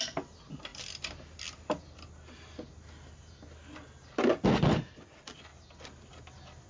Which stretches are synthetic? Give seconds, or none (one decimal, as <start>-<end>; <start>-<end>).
none